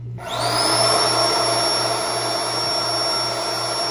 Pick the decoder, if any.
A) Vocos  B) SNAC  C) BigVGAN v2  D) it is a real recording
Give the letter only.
D